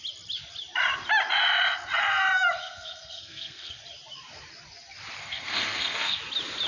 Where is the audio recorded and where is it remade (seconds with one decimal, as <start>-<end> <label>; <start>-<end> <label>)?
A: 0.0-2.6 recorded; 2.6-3.8 remade; 3.8-5.2 recorded; 5.2-6.2 remade; 6.2-6.7 recorded